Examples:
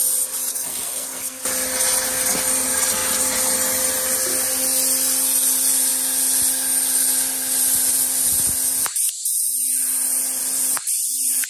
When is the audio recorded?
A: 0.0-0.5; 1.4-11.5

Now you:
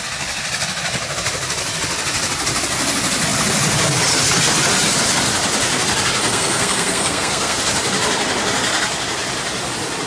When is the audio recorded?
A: 0.0-6.3; 7.6-10.1